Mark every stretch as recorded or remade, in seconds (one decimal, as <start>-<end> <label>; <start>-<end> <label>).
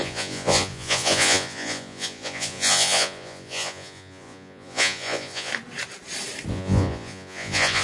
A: 0.0-5.5 remade; 5.5-6.5 recorded; 6.5-7.8 remade